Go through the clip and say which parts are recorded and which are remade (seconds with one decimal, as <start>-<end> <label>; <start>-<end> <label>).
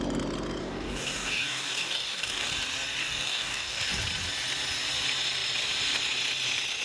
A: 0.0-0.6 recorded; 0.6-2.5 remade; 2.5-3.0 recorded; 3.0-4.0 remade; 4.0-6.8 recorded